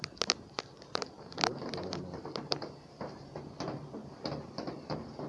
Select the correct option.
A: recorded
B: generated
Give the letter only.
B